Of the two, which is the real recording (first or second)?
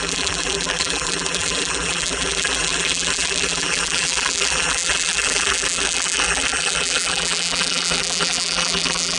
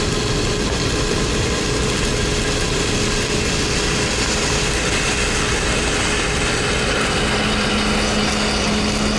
second